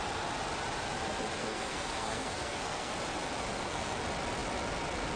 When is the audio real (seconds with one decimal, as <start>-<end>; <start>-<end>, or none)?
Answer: 0.0-1.4; 2.9-3.5; 4.0-5.2